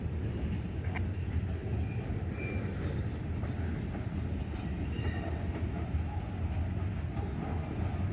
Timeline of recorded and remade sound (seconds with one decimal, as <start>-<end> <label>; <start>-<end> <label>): 0.0-8.1 recorded

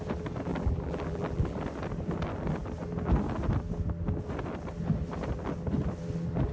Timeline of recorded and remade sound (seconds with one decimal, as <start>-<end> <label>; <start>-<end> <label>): 0.0-0.5 recorded; 0.5-1.6 remade; 1.6-6.5 recorded